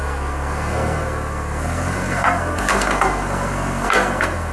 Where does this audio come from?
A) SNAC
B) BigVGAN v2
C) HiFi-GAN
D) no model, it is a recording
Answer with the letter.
A